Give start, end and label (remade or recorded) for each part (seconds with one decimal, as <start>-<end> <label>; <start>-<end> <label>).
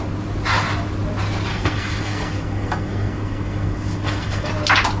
0.0-1.5 recorded; 1.5-4.5 remade; 4.5-5.0 recorded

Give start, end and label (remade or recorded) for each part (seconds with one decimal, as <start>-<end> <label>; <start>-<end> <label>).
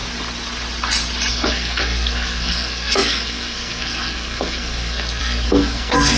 0.0-1.3 recorded; 1.3-6.2 remade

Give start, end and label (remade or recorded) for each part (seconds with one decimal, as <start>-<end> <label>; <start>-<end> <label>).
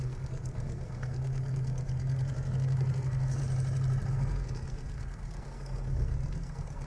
0.0-3.4 remade; 3.4-4.1 recorded; 4.1-6.9 remade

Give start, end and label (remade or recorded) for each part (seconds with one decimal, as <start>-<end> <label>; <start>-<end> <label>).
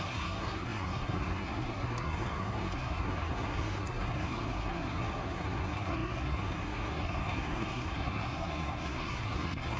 0.0-9.8 remade